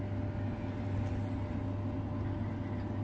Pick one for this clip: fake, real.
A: real